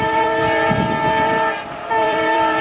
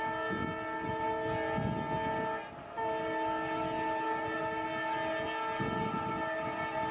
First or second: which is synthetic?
first